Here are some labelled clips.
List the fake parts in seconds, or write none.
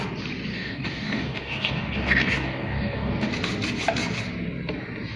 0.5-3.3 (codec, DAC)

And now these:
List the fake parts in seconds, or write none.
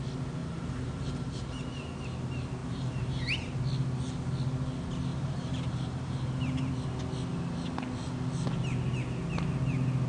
0.4-1.7 (vocoder, BigVGAN v2); 2.6-3.6; 5.1-6.7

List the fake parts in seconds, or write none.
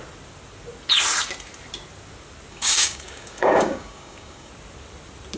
2.5-4.5 (codec, DAC)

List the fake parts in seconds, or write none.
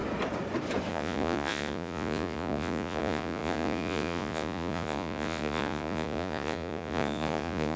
0.9-7.8 (vocoder, Vocos)